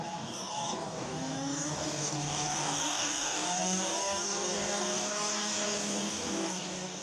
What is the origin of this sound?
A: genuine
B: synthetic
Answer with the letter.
B